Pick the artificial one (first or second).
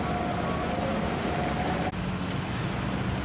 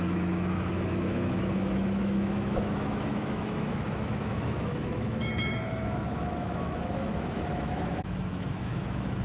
second